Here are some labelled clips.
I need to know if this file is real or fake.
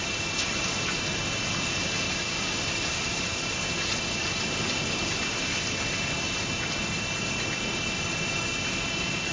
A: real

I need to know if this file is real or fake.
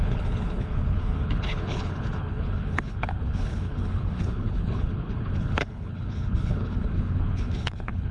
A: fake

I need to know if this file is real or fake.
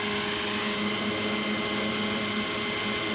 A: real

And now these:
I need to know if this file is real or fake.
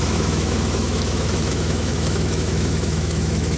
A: fake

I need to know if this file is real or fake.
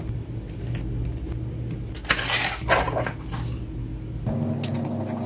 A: real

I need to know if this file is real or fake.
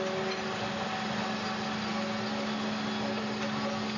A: real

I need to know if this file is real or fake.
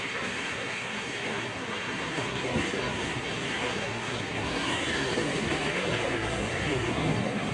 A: fake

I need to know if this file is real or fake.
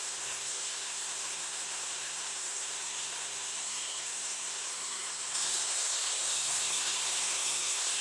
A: fake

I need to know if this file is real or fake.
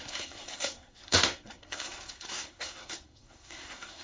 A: fake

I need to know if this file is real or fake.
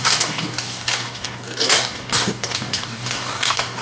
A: fake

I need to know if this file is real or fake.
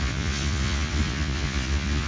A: fake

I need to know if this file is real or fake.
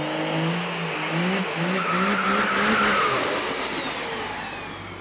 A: real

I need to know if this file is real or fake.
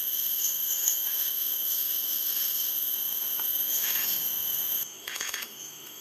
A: fake